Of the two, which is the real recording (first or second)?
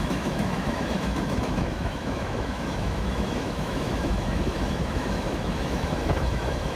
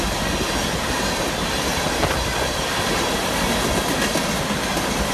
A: second